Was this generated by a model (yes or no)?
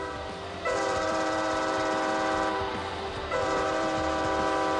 yes